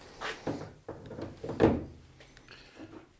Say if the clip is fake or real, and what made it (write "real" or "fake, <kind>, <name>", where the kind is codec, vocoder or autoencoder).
real